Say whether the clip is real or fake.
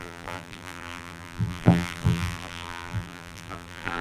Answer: fake